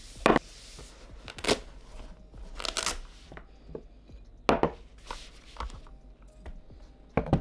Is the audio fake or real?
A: real